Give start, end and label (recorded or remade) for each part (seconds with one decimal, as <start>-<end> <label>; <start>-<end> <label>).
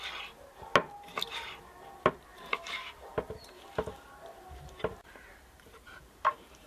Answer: 0.0-2.5 recorded; 2.5-6.7 remade